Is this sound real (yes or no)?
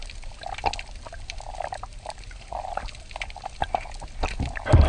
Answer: yes